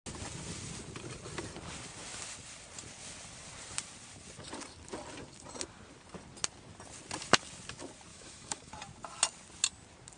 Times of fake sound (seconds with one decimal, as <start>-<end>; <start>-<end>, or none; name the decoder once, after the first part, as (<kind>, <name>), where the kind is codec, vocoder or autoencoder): 8.1-8.7 (autoencoder, DAC-VAE)